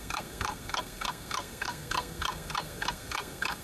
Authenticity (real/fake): fake